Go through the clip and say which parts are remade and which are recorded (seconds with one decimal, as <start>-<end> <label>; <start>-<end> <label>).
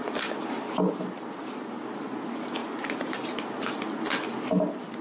0.0-5.0 recorded